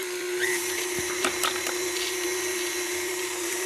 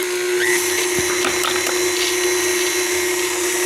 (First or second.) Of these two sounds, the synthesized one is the first